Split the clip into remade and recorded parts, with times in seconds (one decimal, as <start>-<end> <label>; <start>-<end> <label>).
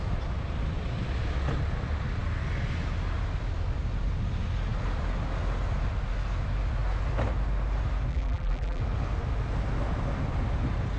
0.0-8.1 recorded; 8.1-8.8 remade; 8.8-11.0 recorded